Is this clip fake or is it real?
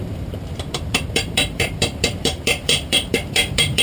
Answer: fake